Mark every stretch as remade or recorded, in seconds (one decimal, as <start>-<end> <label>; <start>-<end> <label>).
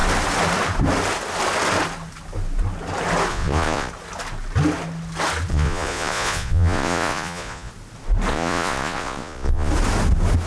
0.0-3.3 recorded; 3.3-3.9 remade; 3.9-5.5 recorded; 5.5-7.7 remade; 7.7-8.3 recorded; 8.3-9.7 remade; 9.7-10.5 recorded